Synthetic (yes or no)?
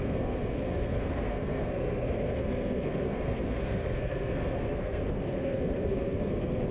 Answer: yes